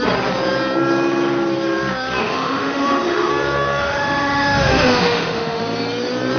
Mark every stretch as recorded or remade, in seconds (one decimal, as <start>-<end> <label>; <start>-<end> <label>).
0.0-2.2 recorded; 2.2-3.3 remade; 3.3-3.8 recorded; 3.8-5.6 remade; 5.6-6.4 recorded